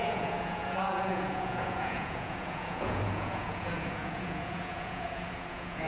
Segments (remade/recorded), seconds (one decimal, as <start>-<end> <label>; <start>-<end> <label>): 0.0-5.9 remade